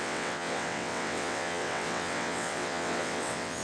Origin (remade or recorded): remade